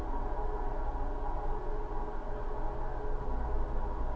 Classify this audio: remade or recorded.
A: recorded